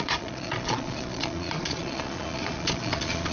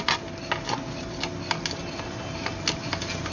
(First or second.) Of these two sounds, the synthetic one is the first